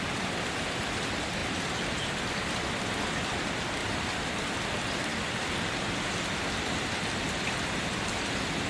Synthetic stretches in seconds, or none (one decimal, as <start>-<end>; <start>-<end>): 3.8-4.4